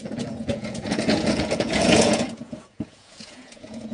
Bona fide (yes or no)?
no